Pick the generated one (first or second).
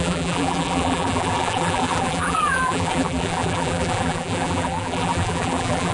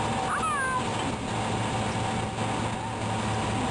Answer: first